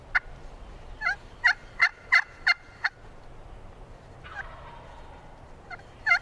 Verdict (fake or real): real